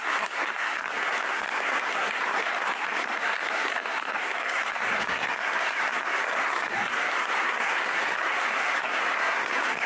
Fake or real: fake